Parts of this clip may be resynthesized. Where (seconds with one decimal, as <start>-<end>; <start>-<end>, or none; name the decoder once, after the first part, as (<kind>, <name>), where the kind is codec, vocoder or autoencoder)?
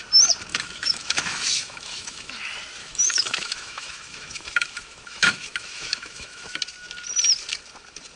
0.5-2.3 (autoencoder, DAC-VAE); 2.8-6.6